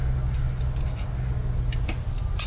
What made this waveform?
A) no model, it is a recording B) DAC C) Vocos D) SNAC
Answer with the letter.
A